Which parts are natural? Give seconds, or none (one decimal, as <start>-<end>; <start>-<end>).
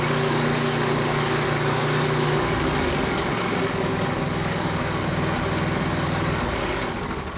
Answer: 5.0-5.9